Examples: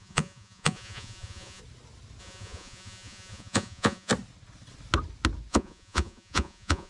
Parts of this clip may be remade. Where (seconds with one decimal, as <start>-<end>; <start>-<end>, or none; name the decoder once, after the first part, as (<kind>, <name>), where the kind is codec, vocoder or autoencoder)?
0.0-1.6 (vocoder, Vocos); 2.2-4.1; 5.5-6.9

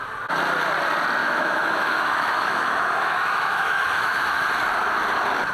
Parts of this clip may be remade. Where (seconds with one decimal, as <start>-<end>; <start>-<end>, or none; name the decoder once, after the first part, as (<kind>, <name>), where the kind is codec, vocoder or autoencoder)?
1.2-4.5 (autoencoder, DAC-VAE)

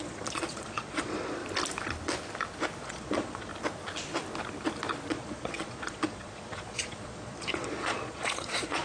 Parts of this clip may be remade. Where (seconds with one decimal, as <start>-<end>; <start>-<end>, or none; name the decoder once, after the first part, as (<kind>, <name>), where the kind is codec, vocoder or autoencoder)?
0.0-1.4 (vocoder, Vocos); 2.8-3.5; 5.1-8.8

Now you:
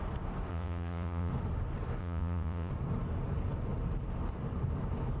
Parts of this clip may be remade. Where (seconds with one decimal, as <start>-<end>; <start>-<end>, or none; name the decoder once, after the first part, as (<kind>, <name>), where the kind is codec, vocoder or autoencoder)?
0.5-1.3 (vocoder, Vocos); 2.0-2.7

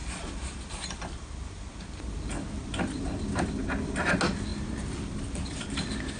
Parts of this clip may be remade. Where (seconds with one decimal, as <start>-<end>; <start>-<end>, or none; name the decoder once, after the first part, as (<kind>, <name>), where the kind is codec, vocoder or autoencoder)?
0.0-2.3 (vocoder, BigVGAN v2); 4.5-5.7